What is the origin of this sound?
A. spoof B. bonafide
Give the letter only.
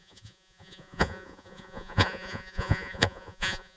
A